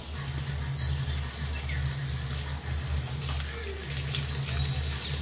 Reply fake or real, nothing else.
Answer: real